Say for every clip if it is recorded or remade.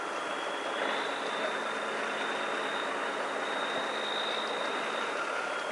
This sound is recorded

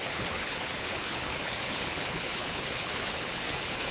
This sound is remade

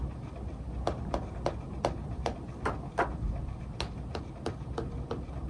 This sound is recorded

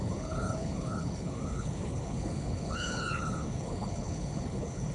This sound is remade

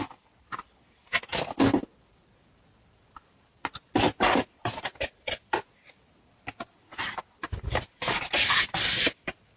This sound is recorded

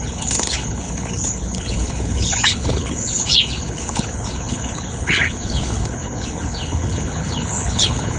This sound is remade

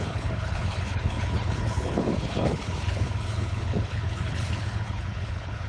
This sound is remade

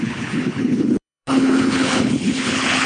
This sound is remade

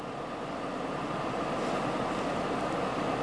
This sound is recorded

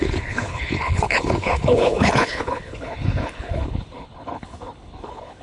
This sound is remade